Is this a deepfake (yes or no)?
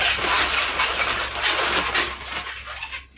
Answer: no